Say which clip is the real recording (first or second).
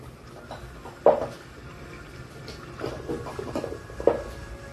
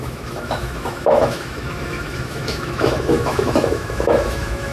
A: first